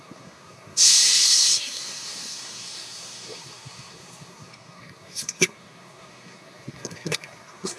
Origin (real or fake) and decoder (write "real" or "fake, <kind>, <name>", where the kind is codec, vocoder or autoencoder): fake, codec, SNAC